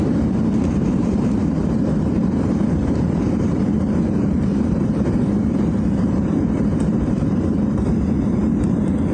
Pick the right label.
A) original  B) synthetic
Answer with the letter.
B